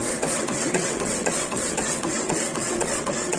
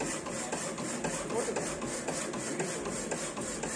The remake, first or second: first